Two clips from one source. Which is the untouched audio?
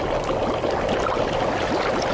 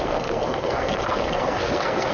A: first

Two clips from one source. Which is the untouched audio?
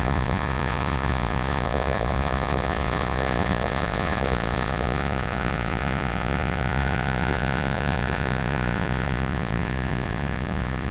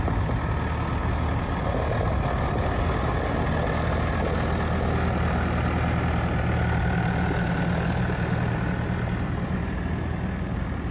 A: second